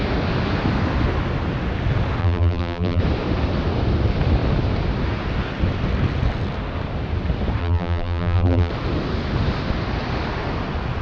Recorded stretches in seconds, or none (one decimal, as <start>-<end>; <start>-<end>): 0.0-2.2; 3.0-7.6; 8.7-11.0